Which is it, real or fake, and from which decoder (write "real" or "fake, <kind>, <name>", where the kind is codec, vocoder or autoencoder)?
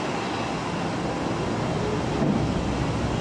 real